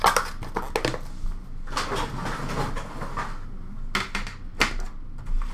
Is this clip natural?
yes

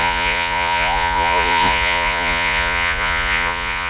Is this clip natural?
no